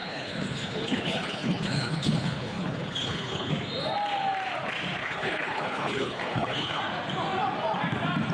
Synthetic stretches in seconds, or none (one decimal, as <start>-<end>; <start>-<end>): 0.0-3.5; 5.0-6.8